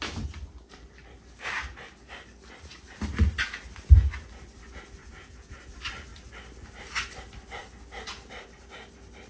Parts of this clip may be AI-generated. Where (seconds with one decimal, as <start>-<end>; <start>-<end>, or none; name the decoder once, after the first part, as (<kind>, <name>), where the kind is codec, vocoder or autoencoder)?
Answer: 5.0-5.6 (vocoder, Vocos)